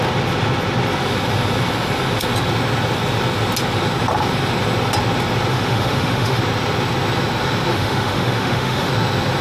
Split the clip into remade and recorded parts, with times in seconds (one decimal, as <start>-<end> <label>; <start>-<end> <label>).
0.0-5.5 recorded; 5.5-6.4 remade; 6.4-7.7 recorded; 7.7-8.9 remade; 8.9-9.4 recorded